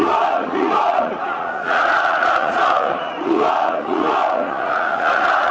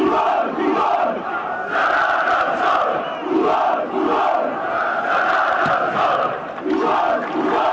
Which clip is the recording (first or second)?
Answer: second